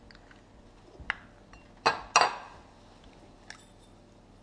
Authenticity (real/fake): real